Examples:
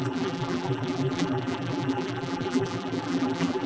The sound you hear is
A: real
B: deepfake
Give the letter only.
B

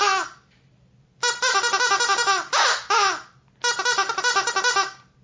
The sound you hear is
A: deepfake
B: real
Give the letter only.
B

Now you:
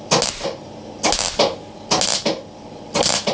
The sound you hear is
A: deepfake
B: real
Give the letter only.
B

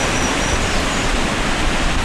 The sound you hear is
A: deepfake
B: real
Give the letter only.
B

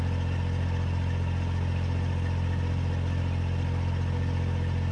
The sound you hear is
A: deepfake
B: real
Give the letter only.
B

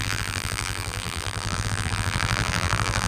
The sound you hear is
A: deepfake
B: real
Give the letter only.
A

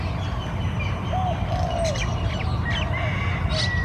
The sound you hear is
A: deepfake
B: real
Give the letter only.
B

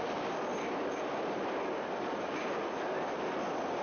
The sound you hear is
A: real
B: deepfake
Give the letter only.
B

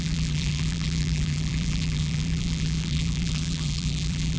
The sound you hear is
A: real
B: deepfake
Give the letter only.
B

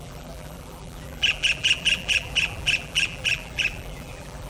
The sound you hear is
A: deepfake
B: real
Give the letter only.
A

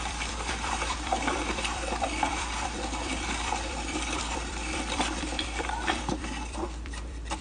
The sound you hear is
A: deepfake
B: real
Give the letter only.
A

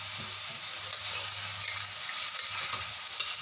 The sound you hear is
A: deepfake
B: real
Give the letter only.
B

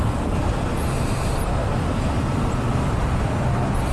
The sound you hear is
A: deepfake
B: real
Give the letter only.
A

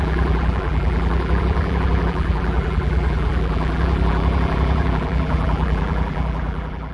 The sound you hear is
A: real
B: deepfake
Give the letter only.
B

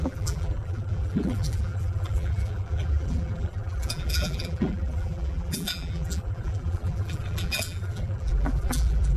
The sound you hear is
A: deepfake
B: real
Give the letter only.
A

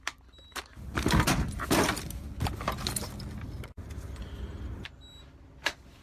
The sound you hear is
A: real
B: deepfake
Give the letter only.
A